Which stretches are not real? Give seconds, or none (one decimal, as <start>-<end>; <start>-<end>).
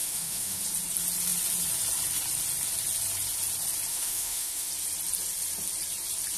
0.0-0.6; 3.9-4.7